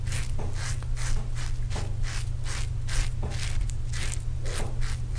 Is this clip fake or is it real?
real